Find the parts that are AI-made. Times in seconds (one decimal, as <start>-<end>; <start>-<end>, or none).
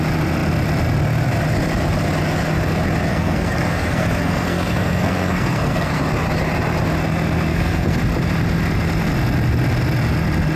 3.1-6.0; 7.5-8.0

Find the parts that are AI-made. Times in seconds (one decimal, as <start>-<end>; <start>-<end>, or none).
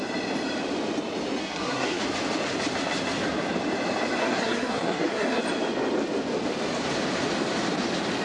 1.4-2.0; 4.2-5.4